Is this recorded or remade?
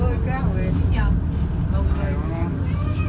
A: recorded